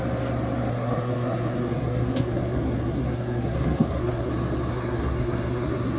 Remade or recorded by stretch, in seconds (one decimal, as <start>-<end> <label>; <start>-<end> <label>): 0.0-0.7 recorded; 0.7-4.3 remade; 4.3-4.7 recorded; 4.7-6.0 remade